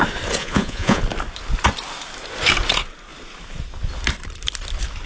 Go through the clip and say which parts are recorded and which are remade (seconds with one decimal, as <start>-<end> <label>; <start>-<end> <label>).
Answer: 0.0-0.4 recorded; 0.4-1.0 remade; 1.0-5.1 recorded